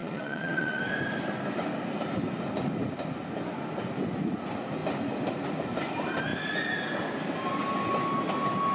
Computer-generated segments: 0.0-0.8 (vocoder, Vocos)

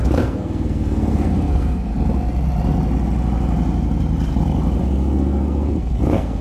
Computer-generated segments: 0.0-1.9 (codec, SNAC); 4.8-6.4

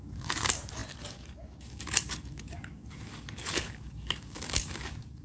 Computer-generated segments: 0.0-5.2 (codec, DAC)

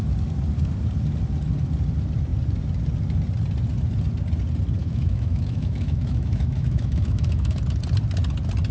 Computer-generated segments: 4.8-7.6 (autoencoder, DAC-VAE)

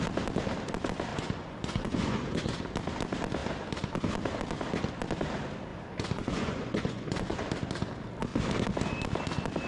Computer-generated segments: 1.1-2.6 (vocoder, Vocos); 5.7-7.4

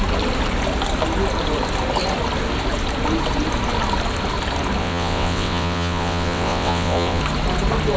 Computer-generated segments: 4.8-7.2 (vocoder, WaveNeXt)

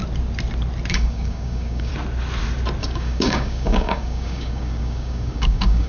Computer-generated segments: 0.9-1.9 (codec, DAC); 2.8-5.9

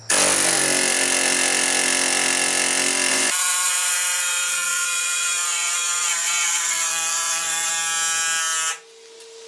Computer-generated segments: 3.1-7.7 (vocoder, Vocos)